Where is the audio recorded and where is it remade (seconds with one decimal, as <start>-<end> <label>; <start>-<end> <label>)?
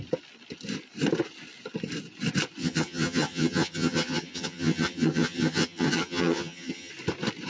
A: 0.0-2.6 recorded; 2.6-6.9 remade; 6.9-7.5 recorded